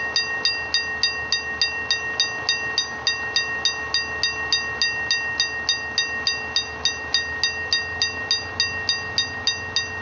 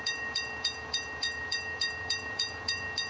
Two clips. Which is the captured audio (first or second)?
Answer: first